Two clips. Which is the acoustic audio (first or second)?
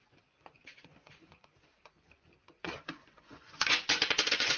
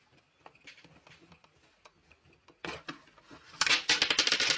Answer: second